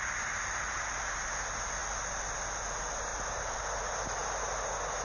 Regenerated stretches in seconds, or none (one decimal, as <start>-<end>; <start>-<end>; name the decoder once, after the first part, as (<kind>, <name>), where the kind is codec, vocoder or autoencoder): 3.1-3.6 (vocoder, BigVGAN v2)